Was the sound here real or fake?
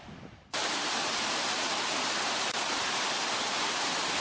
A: real